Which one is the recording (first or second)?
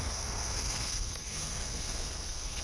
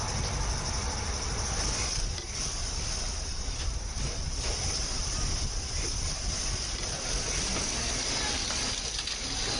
second